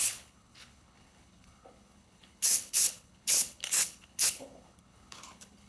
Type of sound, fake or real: fake